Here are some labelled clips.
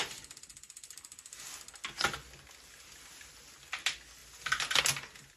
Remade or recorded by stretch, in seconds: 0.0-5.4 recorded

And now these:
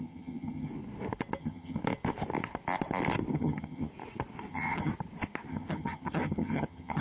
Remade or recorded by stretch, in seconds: 0.0-0.7 remade; 0.7-1.4 recorded; 1.4-1.8 remade; 1.8-3.3 recorded; 3.3-3.9 remade; 3.9-4.5 recorded; 4.5-4.9 remade; 4.9-5.5 recorded; 5.5-7.0 remade

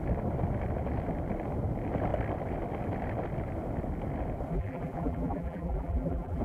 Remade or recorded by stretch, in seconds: 0.0-4.5 recorded; 4.5-6.4 remade

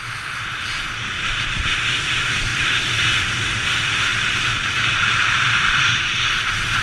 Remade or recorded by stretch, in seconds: 0.0-6.8 recorded

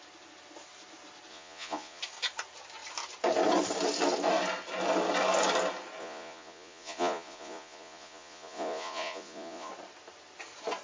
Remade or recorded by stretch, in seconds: 0.0-1.3 recorded; 1.3-2.0 remade; 2.0-6.0 recorded; 6.0-9.7 remade; 9.7-10.8 recorded

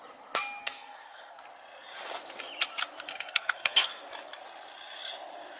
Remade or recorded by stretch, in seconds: 0.0-0.6 recorded; 0.6-1.4 remade; 1.4-3.1 recorded; 3.1-4.0 remade; 4.0-5.6 recorded

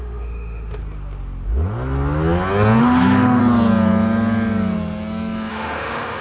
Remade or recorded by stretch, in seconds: 0.0-0.8 remade; 0.8-2.8 recorded; 2.8-3.4 remade; 3.4-5.5 recorded; 5.5-6.2 remade

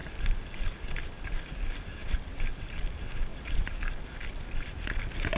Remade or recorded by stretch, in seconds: 0.0-2.0 recorded; 2.0-2.5 remade; 2.5-3.3 recorded; 3.3-3.8 remade; 3.8-5.4 recorded